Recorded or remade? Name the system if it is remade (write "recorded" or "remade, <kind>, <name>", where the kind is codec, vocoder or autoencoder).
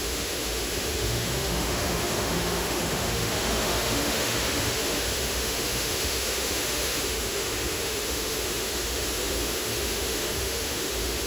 remade, autoencoder, DAC-VAE